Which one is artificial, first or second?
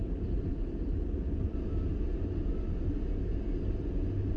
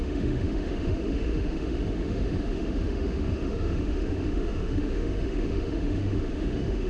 second